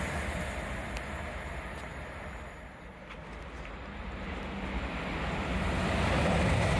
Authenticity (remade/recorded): recorded